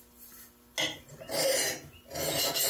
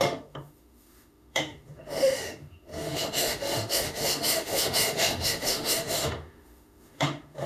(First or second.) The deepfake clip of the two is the second